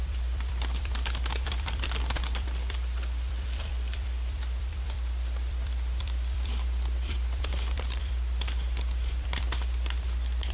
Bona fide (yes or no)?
no